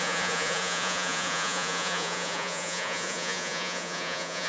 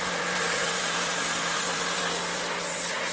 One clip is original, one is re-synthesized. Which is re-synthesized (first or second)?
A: first